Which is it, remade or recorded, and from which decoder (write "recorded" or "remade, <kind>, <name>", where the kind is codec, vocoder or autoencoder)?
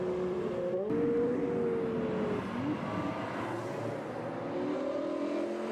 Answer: recorded